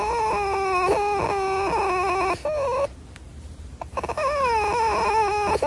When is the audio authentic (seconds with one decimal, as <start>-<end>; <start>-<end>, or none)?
0.0-5.7